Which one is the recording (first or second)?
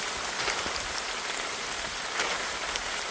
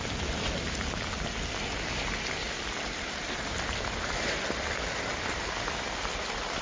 second